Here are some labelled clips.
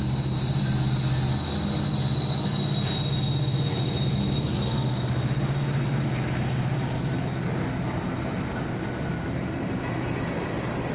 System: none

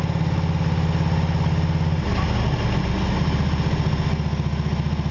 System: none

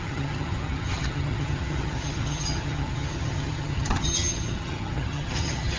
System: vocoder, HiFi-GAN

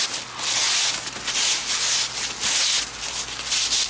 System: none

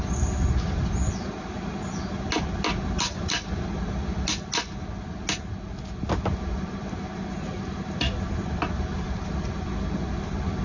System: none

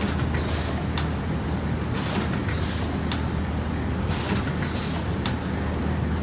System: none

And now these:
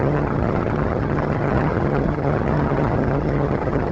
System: vocoder, HiFi-GAN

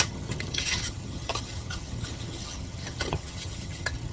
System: vocoder, HiFi-GAN